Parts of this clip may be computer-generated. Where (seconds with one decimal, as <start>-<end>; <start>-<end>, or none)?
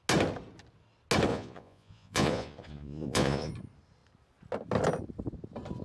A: 1.3-3.5